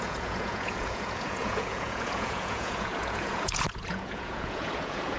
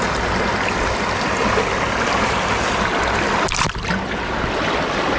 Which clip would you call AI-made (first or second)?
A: first